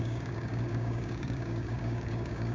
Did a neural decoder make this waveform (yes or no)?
yes